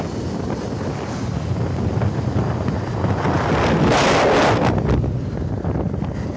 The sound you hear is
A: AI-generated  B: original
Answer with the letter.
B